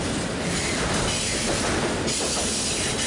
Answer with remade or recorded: recorded